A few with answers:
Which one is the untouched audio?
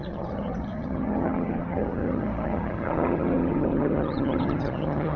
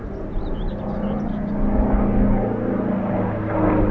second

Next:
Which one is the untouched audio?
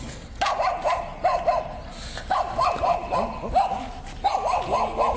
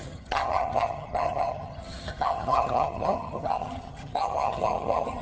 first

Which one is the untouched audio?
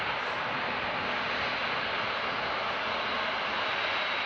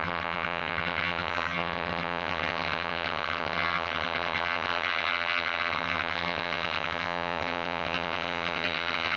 first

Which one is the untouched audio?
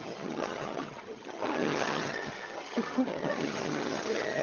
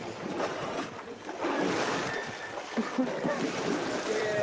second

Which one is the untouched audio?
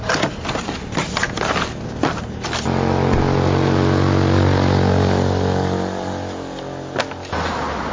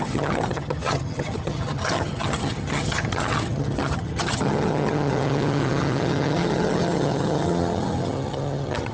first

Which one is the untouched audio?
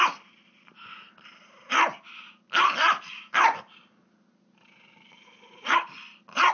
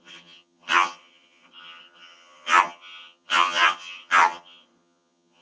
first